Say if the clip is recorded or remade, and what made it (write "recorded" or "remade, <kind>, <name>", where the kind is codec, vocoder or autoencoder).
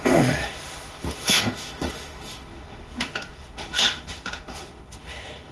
remade, autoencoder, DAC-VAE